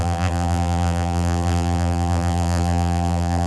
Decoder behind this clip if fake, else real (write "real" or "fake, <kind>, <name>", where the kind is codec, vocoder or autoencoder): fake, vocoder, BigVGAN v2